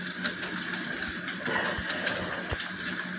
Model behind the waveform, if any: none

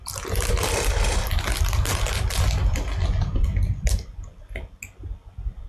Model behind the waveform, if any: none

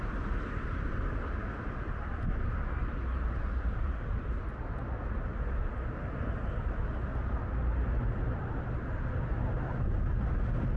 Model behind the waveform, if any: none